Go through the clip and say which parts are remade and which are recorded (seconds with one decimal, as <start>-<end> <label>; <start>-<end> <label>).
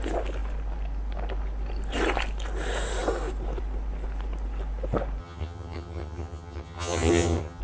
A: 0.0-5.2 recorded; 5.2-7.6 remade